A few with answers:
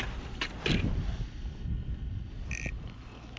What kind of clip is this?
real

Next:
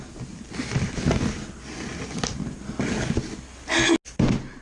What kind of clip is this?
real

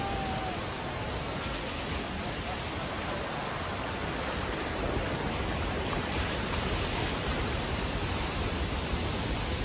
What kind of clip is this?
real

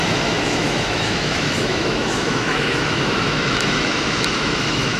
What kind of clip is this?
fake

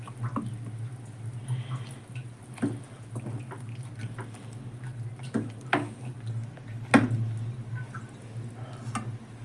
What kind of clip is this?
real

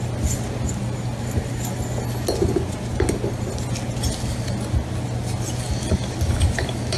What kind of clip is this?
real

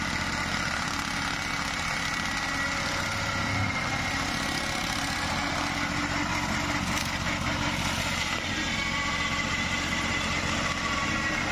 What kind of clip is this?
real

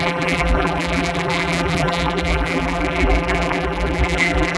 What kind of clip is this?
fake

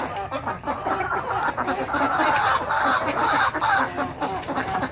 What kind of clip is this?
real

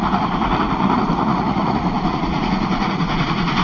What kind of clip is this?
fake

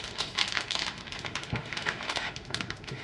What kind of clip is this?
fake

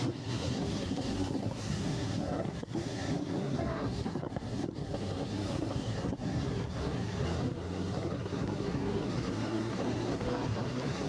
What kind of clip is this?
fake